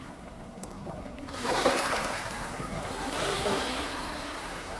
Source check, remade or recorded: remade